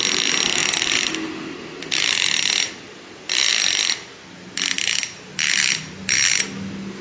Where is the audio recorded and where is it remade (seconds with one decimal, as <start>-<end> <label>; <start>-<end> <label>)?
0.0-7.0 recorded